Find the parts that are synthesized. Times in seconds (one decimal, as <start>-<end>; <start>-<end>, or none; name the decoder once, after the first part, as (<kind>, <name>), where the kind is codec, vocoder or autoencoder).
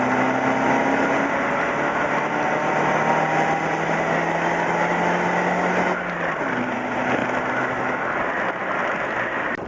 none